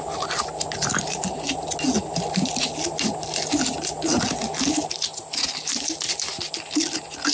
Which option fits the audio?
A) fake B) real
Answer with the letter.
B